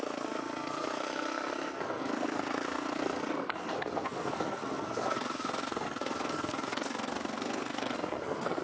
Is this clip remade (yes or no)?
yes